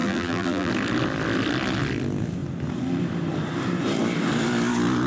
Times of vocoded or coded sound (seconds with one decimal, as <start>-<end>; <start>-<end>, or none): 0.0-0.7